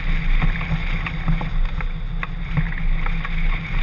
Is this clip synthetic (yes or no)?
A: no